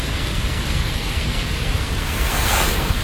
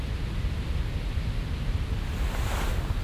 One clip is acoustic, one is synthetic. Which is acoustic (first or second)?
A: second